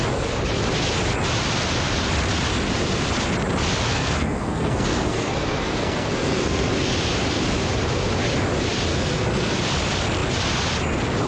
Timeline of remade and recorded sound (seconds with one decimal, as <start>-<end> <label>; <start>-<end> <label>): 0.0-3.9 recorded; 3.9-6.7 remade; 6.7-8.9 recorded; 8.9-9.6 remade; 9.6-11.3 recorded